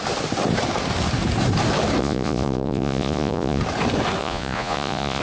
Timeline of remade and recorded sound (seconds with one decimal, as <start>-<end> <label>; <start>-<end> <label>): 0.0-2.0 recorded; 2.0-3.6 remade; 3.6-4.2 recorded; 4.2-5.2 remade